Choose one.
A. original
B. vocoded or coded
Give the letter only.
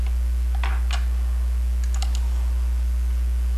A